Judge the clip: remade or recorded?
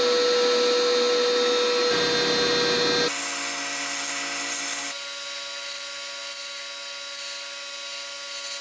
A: recorded